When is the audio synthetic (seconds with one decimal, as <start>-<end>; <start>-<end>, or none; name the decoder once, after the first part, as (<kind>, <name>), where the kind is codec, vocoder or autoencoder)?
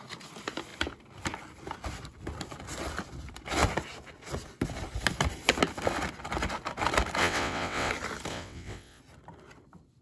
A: 7.2-7.9 (vocoder, WaveNeXt); 8.3-9.0